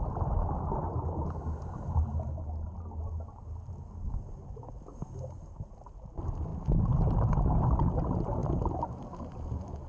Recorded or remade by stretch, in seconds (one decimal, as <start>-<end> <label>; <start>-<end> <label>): 0.0-9.9 recorded